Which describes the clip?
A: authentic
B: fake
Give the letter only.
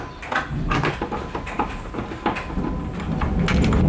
A